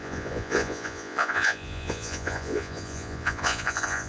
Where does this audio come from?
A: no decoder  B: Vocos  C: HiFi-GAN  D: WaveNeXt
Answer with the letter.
B